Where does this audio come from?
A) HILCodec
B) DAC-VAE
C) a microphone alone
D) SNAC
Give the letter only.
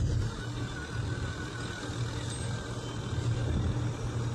C